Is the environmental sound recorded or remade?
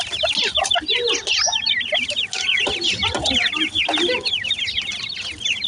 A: recorded